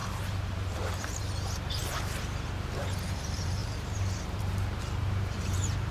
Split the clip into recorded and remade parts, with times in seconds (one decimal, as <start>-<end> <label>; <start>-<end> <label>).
0.0-1.8 remade; 1.8-3.0 recorded; 3.0-5.9 remade